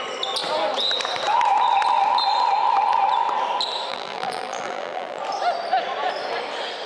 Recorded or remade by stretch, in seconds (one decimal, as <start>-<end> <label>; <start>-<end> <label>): 0.0-3.9 recorded; 3.9-5.2 remade; 5.2-6.9 recorded